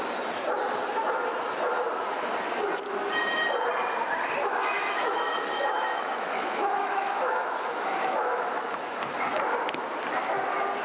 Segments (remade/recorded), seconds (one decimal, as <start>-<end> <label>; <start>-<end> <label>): 0.0-4.4 recorded; 4.4-9.0 remade; 9.0-10.8 recorded